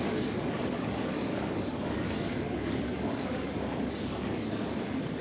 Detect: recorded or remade remade